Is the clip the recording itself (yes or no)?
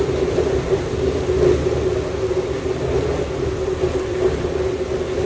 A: yes